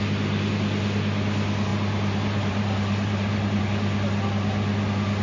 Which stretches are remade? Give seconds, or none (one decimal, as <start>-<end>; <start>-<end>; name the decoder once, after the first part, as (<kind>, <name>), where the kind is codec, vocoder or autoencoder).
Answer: 1.7-3.6 (vocoder, BigVGAN v2)

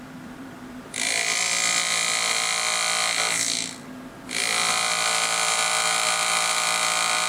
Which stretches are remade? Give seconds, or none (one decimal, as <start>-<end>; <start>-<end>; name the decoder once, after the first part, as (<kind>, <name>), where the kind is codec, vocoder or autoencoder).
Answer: 0.0-2.5 (vocoder, BigVGAN v2); 4.7-7.3

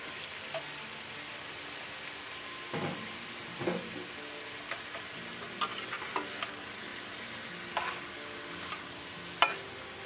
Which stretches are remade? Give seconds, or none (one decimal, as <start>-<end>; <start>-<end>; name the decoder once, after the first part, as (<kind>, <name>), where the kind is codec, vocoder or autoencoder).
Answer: none

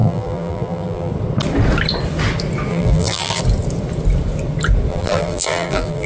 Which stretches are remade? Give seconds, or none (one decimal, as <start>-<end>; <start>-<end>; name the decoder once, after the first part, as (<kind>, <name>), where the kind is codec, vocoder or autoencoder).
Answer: 0.0-1.1 (vocoder, BigVGAN v2); 2.7-3.4; 4.9-6.1

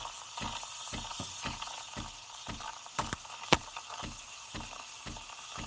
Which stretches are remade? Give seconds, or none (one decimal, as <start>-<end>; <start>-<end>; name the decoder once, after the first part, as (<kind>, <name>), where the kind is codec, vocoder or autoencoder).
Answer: 1.1-3.6 (vocoder, BigVGAN v2)

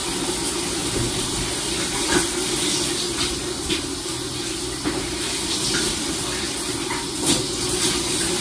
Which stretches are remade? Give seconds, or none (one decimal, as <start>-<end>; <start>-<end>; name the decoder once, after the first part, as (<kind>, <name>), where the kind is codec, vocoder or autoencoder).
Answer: none